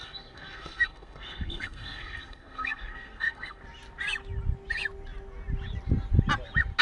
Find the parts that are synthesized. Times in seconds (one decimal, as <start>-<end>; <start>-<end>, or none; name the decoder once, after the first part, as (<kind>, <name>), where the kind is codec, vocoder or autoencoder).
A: 0.0-3.6 (codec, SNAC)